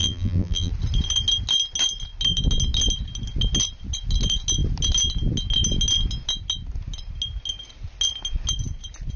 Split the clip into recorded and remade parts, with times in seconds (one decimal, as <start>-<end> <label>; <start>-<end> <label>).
0.0-0.7 remade; 0.7-9.2 recorded